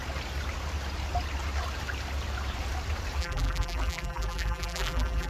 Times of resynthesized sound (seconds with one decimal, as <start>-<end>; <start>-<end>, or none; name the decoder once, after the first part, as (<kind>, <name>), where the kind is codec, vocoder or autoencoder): 3.2-5.3 (vocoder, BigVGAN v2)